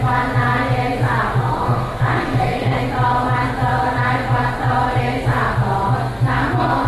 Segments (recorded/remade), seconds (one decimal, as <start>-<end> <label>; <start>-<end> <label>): 0.0-1.4 recorded; 1.4-2.8 remade; 2.8-6.9 recorded